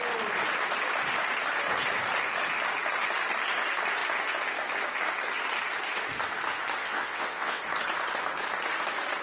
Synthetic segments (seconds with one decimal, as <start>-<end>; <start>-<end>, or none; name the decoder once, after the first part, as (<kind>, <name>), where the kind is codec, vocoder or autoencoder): 6.8-7.6 (vocoder, WaveNeXt)